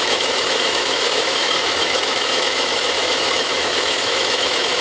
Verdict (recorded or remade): remade